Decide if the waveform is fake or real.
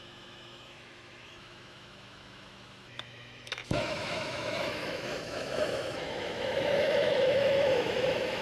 fake